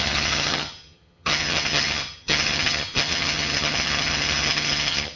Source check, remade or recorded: remade